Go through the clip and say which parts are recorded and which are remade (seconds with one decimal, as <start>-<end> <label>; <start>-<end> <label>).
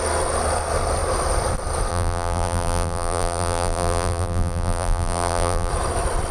0.0-1.9 recorded; 1.9-5.7 remade; 5.7-6.3 recorded